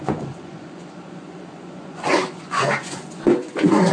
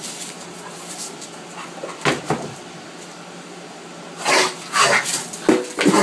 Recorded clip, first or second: second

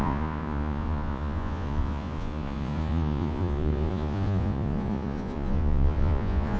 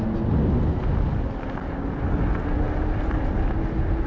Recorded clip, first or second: second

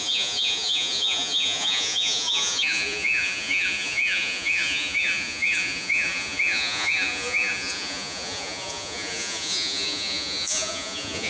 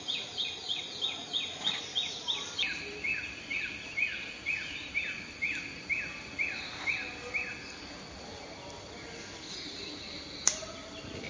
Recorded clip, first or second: second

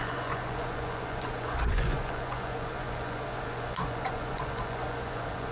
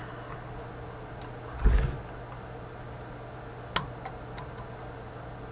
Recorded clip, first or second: second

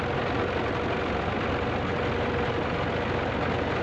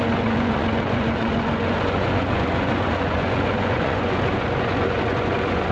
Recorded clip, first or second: first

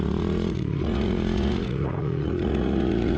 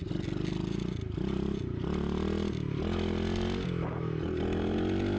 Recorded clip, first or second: second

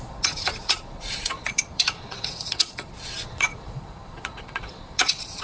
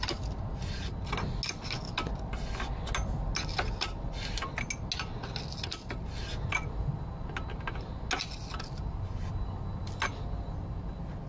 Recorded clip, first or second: second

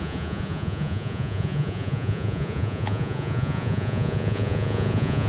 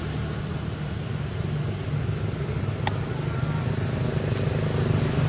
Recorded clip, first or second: second